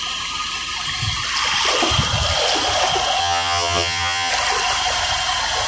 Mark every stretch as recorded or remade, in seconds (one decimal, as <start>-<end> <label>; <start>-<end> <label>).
0.0-3.2 recorded; 3.2-4.3 remade; 4.3-5.7 recorded